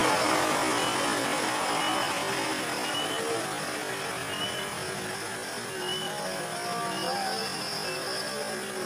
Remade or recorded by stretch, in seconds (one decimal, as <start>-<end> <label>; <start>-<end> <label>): 0.0-8.9 recorded